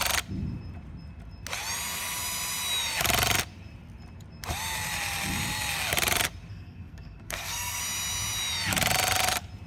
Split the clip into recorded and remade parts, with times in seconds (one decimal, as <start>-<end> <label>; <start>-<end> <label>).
0.0-6.5 recorded; 6.5-7.8 remade; 7.8-9.7 recorded